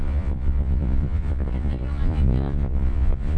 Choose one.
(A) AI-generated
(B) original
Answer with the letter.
A